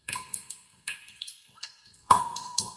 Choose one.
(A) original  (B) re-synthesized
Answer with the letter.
B